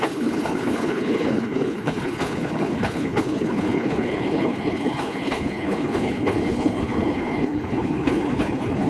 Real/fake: fake